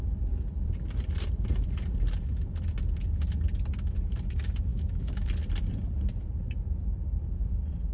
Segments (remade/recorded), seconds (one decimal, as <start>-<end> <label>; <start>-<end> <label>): 0.0-4.7 recorded; 4.7-5.3 remade; 5.3-7.9 recorded